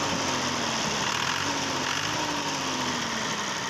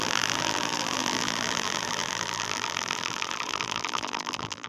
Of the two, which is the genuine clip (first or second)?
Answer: first